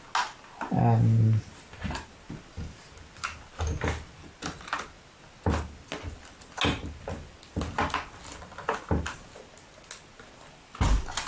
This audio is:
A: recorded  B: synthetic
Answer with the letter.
A